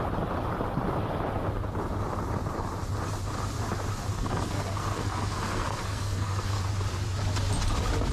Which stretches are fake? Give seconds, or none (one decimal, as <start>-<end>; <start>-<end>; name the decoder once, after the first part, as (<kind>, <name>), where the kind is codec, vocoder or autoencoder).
4.1-6.6 (codec, SNAC)